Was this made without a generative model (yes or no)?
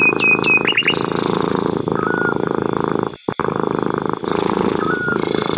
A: yes